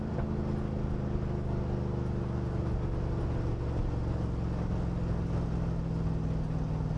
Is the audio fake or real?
real